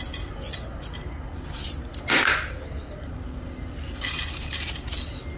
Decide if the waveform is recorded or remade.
recorded